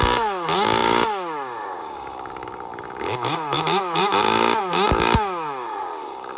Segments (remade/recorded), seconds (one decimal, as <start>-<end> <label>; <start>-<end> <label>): 0.0-6.4 remade